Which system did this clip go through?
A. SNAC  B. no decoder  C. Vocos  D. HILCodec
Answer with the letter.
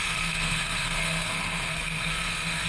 A